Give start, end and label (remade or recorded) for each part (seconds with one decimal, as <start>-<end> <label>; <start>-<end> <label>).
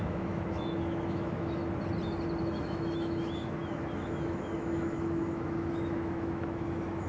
0.0-1.6 remade; 1.6-2.4 recorded; 2.4-7.1 remade